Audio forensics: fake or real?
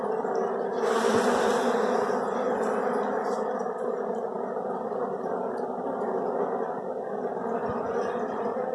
real